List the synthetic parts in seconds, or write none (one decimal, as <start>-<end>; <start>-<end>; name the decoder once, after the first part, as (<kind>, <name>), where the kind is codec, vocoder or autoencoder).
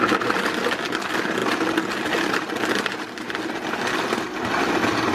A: 0.0-1.4 (vocoder, BigVGAN v2); 2.3-5.1